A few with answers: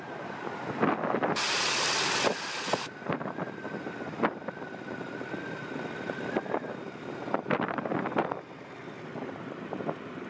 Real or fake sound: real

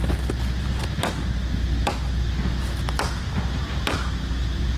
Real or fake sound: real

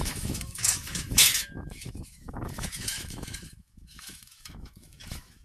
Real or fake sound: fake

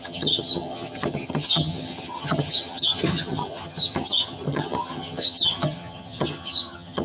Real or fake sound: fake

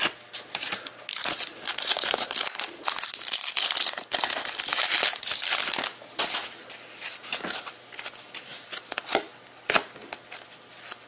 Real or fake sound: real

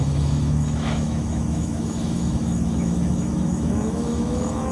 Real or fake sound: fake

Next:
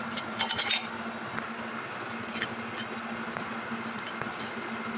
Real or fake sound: real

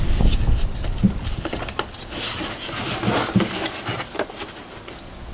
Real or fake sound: real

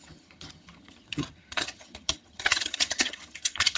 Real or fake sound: fake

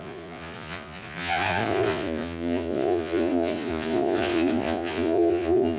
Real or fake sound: fake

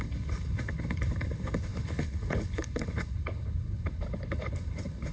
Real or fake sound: fake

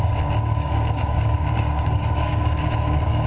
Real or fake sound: fake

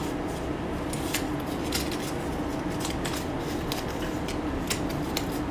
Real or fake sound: real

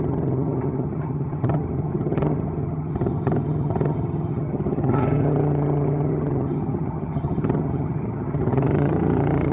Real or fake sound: fake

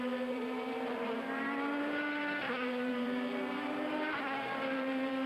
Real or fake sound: fake